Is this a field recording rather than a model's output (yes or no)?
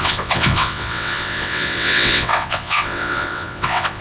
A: no